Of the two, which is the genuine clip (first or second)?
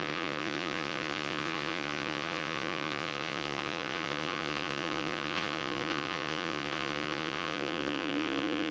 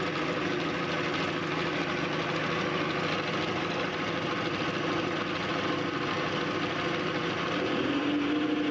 second